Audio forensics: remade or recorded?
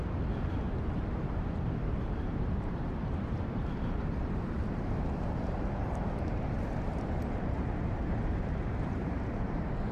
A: remade